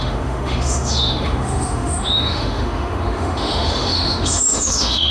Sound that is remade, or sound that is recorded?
remade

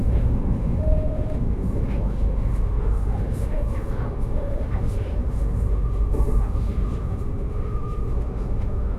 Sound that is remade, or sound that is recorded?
remade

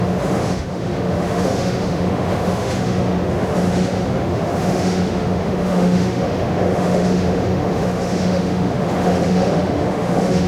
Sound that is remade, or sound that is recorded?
remade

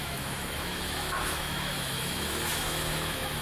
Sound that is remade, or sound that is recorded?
remade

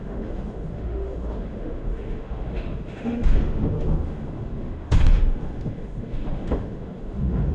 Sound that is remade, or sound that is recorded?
remade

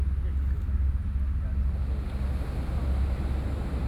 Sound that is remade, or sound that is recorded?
recorded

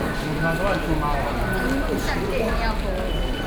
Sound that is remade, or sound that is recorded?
recorded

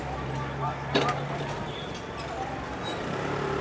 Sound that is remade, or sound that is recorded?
recorded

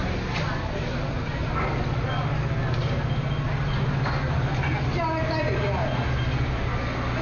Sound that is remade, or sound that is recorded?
recorded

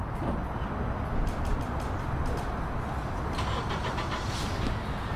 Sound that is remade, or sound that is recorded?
recorded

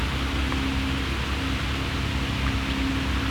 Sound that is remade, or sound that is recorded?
recorded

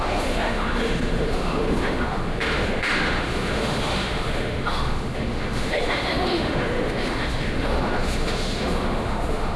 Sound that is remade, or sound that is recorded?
remade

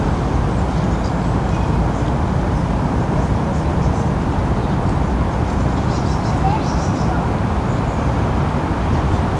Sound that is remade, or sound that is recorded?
recorded